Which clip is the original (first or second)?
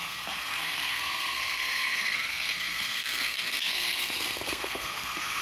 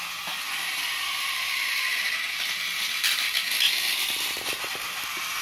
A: second